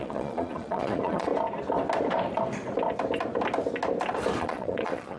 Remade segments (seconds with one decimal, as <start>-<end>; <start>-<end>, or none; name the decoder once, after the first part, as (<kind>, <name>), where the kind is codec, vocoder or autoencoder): 0.0-1.3 (vocoder, Vocos); 4.4-5.2